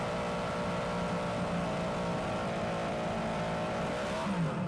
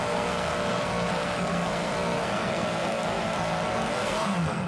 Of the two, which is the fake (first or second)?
second